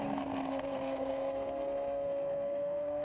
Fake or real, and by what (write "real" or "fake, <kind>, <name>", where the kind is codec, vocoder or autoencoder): fake, codec, SNAC